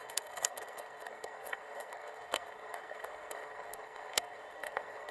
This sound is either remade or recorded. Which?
remade